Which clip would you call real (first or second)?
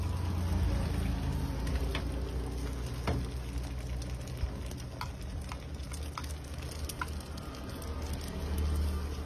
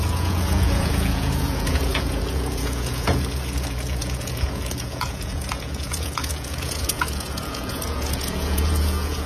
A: first